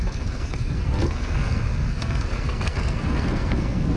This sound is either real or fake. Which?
fake